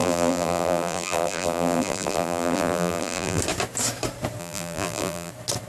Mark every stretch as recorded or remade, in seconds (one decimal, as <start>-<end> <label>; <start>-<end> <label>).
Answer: 0.0-3.4 remade; 3.4-4.4 recorded; 4.4-5.3 remade; 5.3-5.7 recorded